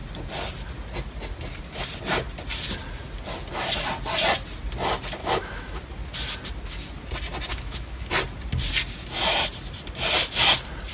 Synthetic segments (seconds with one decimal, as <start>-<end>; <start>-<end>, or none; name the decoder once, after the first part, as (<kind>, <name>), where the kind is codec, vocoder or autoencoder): 5.2-5.8 (autoencoder, DAC-VAE); 7.5-8.1